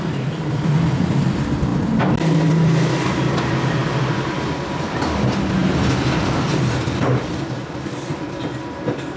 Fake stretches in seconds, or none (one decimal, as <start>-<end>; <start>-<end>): none